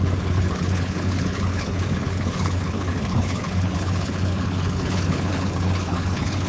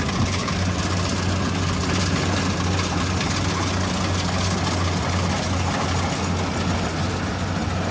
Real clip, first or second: second